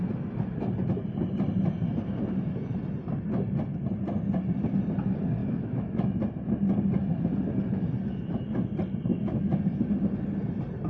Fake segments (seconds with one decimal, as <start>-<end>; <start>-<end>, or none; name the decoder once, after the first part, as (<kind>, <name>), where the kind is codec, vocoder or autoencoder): 5.4-6.2 (autoencoder, DAC-VAE); 9.1-9.6